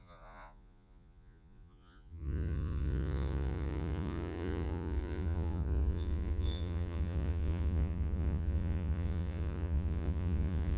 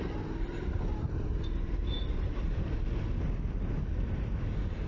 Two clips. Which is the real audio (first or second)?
second